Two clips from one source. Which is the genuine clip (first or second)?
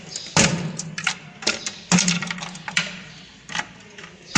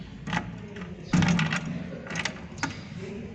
second